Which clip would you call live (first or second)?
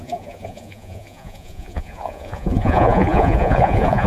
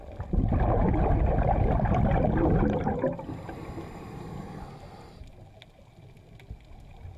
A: second